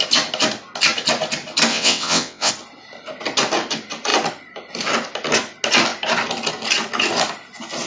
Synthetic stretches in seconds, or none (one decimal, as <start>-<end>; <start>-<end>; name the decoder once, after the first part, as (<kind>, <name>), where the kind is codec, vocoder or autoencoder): 1.7-2.5 (vocoder, WaveNeXt)